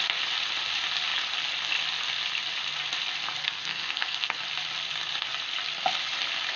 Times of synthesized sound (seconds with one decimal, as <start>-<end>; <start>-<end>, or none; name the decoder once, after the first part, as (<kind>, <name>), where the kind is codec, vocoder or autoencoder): 3.4-4.4 (codec, SNAC)